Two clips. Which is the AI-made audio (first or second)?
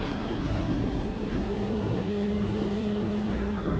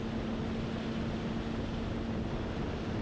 first